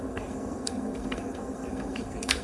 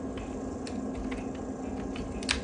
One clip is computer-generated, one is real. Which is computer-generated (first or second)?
first